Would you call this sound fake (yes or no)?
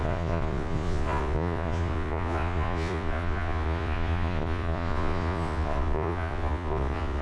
yes